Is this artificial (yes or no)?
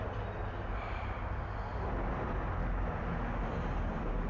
no